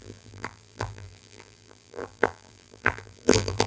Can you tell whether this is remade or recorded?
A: remade